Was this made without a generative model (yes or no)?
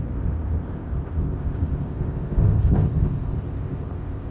no